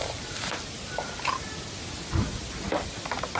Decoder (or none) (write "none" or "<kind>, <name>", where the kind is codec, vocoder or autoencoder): none